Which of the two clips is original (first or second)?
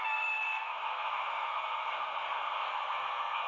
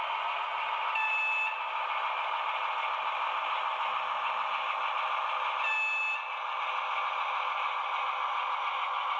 second